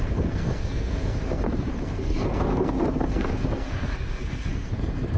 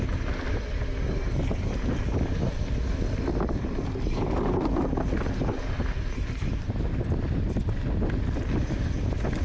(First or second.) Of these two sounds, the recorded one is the second